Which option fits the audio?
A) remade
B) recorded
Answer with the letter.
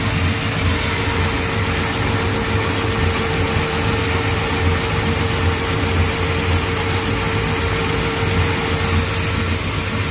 B